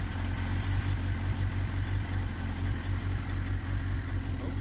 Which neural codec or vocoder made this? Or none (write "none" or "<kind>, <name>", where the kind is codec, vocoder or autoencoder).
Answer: none